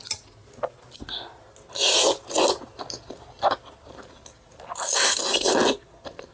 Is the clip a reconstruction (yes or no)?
no